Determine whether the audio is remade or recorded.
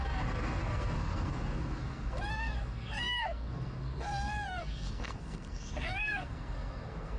remade